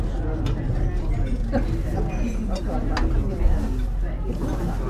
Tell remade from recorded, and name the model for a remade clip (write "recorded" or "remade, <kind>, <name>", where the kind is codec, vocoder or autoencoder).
recorded